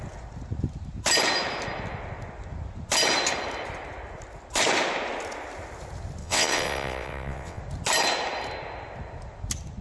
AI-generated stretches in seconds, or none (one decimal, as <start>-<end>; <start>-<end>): 6.2-7.6